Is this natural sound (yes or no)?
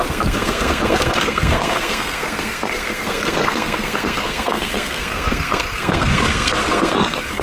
no